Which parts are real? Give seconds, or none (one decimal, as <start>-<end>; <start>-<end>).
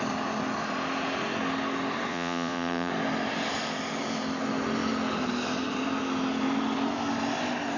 0.0-2.1; 2.9-7.8